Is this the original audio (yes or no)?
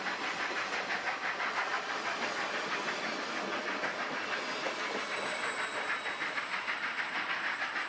yes